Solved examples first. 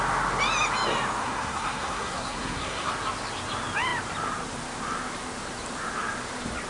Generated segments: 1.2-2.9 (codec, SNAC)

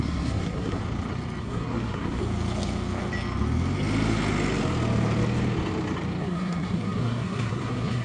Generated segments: 0.0-0.8 (codec, SNAC); 1.4-2.2; 6.2-8.0

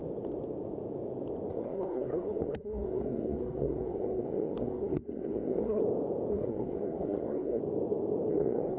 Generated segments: 1.5-5.8 (codec, SNAC); 6.3-7.6; 8.3-8.8

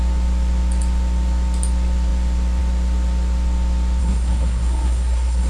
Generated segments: 4.0-5.5 (codec, SNAC)

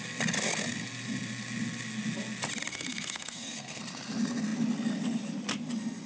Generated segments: 2.7-3.8 (codec, SNAC)

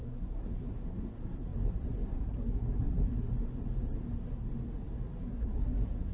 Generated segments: 0.0-3.3 (codec, SNAC); 4.1-4.5; 5.1-6.1

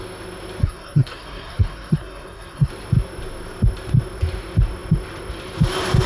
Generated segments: 0.6-2.7 (codec, SNAC)

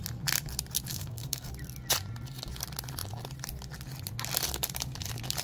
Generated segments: 0.9-1.5 (codec, SNAC)